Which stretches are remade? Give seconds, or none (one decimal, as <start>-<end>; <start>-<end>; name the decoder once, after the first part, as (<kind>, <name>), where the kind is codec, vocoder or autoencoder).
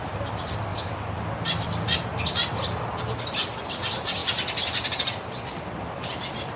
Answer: none